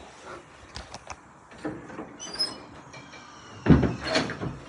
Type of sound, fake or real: real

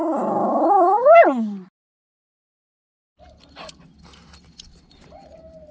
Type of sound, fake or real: real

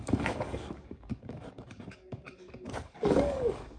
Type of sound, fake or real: fake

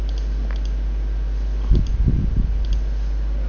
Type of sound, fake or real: real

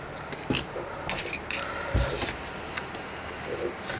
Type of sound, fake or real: real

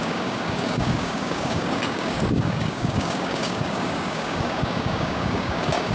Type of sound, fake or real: fake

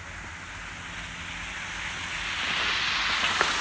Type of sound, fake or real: real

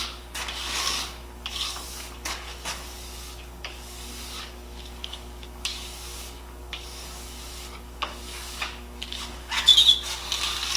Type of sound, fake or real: fake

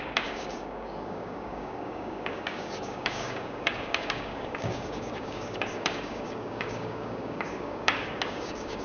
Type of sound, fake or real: fake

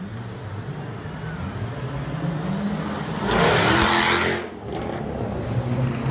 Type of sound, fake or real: real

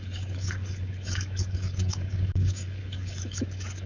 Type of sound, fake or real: fake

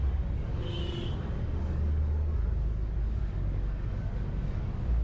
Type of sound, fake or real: fake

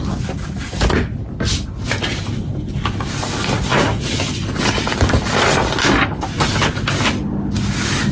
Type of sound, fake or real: real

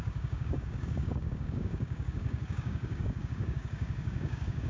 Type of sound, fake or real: fake